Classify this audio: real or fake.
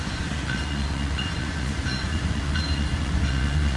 fake